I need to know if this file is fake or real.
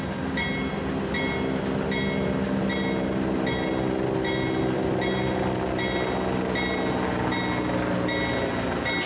real